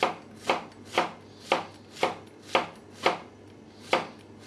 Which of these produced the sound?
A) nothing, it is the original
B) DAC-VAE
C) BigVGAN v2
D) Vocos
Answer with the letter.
A